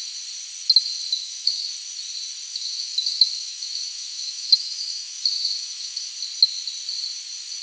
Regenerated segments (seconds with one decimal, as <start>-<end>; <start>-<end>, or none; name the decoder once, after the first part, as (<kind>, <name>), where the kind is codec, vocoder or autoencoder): 1.1-1.7 (autoencoder, DAC-VAE); 2.5-6.1